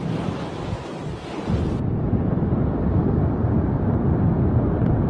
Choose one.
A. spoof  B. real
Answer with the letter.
B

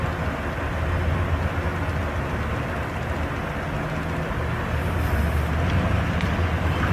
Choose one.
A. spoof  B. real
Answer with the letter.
B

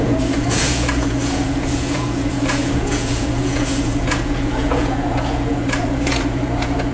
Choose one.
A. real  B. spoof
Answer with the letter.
B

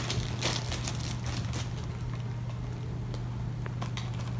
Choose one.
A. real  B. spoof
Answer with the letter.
A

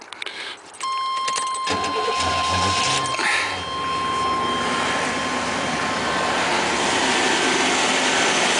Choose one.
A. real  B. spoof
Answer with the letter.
A